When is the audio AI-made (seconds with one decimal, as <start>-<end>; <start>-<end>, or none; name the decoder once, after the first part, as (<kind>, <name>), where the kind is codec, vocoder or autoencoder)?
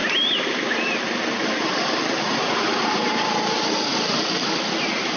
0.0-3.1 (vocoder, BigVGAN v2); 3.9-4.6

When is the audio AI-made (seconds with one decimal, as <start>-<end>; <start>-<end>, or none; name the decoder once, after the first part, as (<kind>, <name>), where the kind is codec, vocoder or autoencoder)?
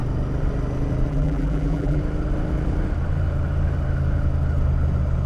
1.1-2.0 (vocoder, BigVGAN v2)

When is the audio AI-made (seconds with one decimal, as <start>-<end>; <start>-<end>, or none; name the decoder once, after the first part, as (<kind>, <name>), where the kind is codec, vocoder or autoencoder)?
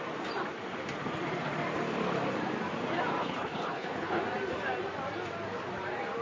3.2-4.2 (codec, HILCodec)